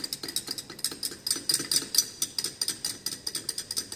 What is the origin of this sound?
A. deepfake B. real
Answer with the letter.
B